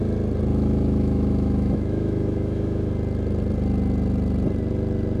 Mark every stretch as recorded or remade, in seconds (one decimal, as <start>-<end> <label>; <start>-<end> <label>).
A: 0.0-0.5 recorded; 0.5-2.9 remade; 2.9-5.2 recorded